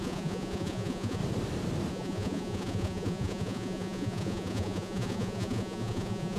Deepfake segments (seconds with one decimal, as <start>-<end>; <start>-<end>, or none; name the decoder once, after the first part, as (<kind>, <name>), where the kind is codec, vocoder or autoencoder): 0.0-1.2 (vocoder, Vocos); 1.9-6.4